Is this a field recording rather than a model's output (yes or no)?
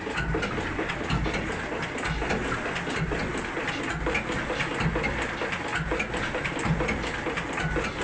yes